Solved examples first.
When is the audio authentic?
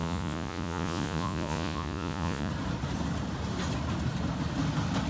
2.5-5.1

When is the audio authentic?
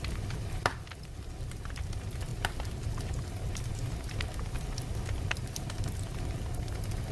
0.0-7.1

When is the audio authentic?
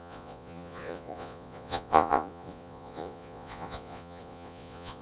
none